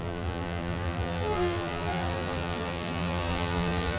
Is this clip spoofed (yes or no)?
yes